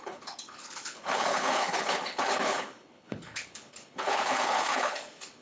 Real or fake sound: fake